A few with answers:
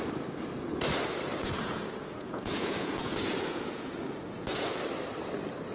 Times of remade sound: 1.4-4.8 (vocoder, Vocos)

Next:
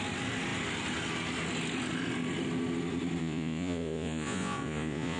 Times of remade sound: 3.2-5.2 (vocoder, Vocos)

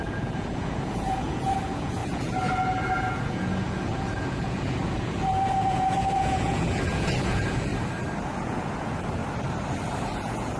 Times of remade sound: 0.0-7.7 (vocoder, Vocos); 8.3-9.2; 10.0-10.6

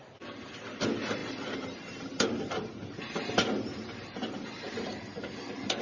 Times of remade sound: none

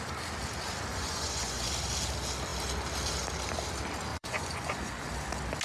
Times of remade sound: 0.9-1.7 (vocoder, Vocos); 4.1-5.1

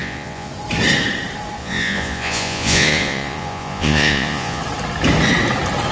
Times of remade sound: 0.0-0.5 (vocoder, Vocos); 1.6-4.6

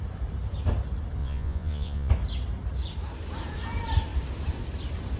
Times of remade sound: 1.2-2.1 (vocoder, Vocos)

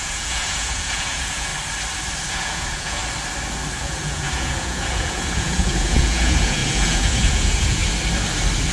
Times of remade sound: 0.0-1.5 (vocoder, Vocos); 2.3-3.0; 3.8-7.8